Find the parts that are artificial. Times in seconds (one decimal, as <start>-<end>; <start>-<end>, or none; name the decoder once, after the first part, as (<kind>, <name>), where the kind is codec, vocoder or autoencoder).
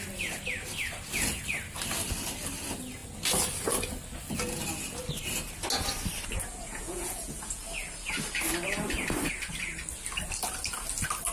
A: 6.7-7.6 (vocoder, Vocos)